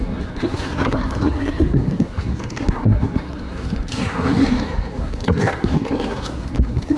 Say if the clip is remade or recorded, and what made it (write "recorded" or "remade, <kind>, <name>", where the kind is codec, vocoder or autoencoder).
remade, codec, SNAC